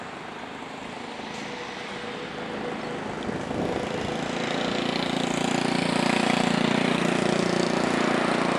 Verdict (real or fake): real